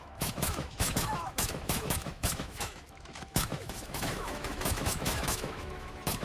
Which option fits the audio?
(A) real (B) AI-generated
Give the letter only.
B